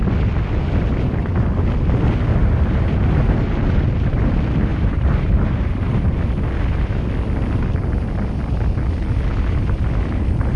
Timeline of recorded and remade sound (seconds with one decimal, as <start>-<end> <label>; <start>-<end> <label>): 0.0-2.4 recorded; 2.4-3.6 remade; 3.6-4.7 recorded; 4.7-6.2 remade; 6.2-10.6 recorded